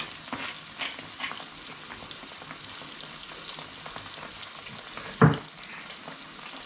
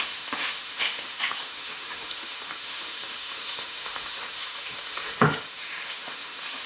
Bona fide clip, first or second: first